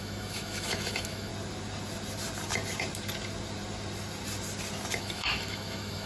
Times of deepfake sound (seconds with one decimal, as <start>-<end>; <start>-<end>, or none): 0.0-1.3; 5.0-6.1